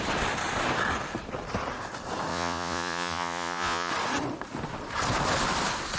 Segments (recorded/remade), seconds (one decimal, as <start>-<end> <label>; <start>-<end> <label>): 0.0-2.3 recorded; 2.3-3.9 remade; 3.9-6.0 recorded